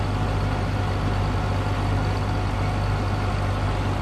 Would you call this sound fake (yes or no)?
no